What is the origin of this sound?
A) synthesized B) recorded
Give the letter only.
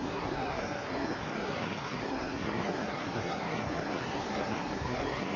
A